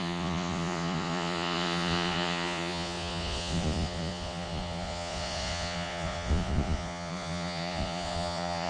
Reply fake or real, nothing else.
fake